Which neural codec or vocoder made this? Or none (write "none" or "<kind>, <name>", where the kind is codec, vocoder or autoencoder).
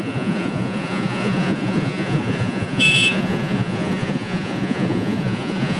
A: vocoder, Vocos